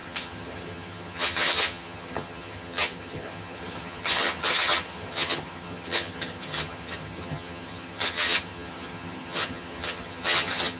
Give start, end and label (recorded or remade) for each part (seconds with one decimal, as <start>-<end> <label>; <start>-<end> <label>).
0.0-10.8 remade